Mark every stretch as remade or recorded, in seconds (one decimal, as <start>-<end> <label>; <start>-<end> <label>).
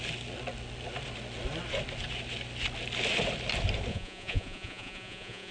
0.0-3.9 recorded; 3.9-5.5 remade